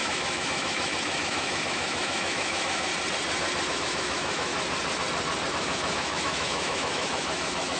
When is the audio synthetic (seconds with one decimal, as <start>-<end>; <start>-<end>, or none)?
0.0-2.9; 3.7-4.5; 5.5-7.8